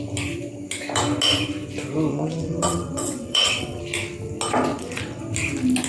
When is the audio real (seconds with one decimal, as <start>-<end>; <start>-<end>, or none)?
0.0-2.1; 3.8-4.7; 5.2-5.9